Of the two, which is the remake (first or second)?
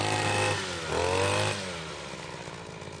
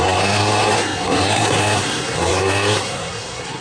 second